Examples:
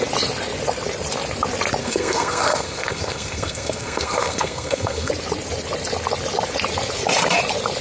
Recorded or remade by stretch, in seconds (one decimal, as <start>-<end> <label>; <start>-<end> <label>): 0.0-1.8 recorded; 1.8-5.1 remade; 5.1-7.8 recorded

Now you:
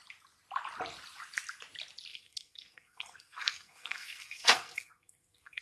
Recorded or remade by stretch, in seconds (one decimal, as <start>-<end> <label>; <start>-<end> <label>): 0.0-2.1 recorded; 2.1-5.6 remade

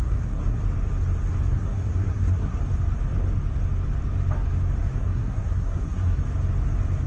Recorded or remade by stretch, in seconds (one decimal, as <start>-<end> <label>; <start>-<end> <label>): 0.0-0.6 remade; 0.6-1.5 recorded; 1.5-2.6 remade; 2.6-5.0 recorded; 5.0-6.2 remade; 6.2-7.1 recorded

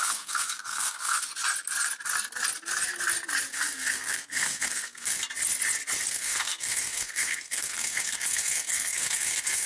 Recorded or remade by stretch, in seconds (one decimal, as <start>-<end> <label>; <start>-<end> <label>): 0.0-1.3 remade; 1.3-3.5 recorded; 3.5-5.2 remade; 5.2-6.1 recorded; 6.1-9.7 remade

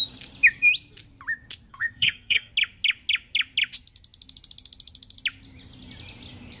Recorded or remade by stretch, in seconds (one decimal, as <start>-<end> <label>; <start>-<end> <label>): 0.0-1.7 recorded; 1.7-2.5 remade; 2.5-6.6 recorded

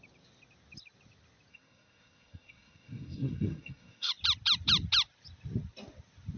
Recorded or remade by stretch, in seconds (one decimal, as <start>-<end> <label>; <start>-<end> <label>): 0.0-1.5 recorded; 1.5-4.1 remade; 4.1-6.4 recorded

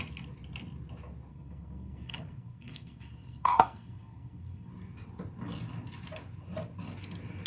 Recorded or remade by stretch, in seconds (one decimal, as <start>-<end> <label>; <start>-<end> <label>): 0.0-1.3 recorded; 1.3-4.7 remade; 4.7-7.5 recorded